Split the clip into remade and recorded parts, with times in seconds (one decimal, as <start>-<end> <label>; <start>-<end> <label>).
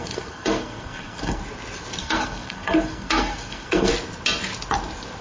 0.0-1.4 remade; 1.4-2.0 recorded; 2.0-3.9 remade; 3.9-5.2 recorded